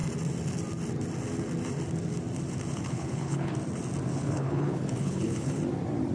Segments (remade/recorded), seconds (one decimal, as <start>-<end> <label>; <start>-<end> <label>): 0.0-2.7 recorded; 2.7-3.5 remade; 3.5-4.1 recorded; 4.1-5.6 remade; 5.6-6.1 recorded